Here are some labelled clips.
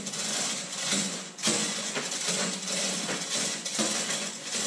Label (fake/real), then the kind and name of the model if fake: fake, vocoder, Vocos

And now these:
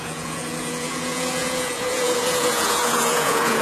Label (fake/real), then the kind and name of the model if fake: fake, vocoder, Vocos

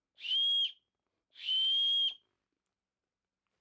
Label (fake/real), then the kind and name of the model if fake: real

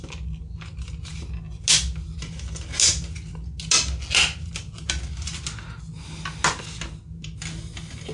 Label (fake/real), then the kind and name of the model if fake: real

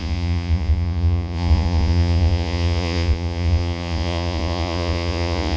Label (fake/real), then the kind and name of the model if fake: fake, vocoder, Vocos